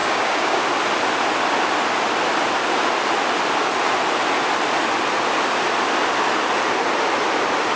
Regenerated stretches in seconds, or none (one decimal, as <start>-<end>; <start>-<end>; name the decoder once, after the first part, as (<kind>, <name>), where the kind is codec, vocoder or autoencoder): 0.0-0.6 (codec, DAC)